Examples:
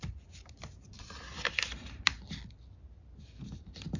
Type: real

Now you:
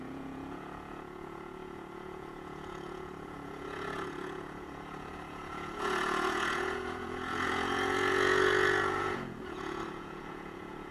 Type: fake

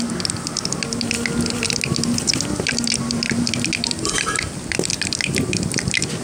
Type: real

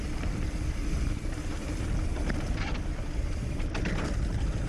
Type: real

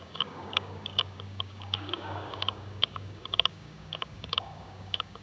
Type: fake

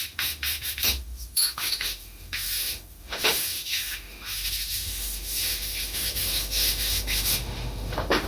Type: fake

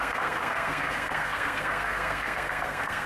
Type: fake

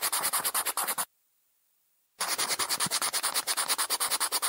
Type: real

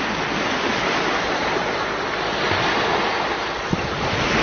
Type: real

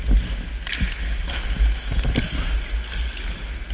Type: real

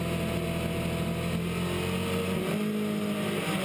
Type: real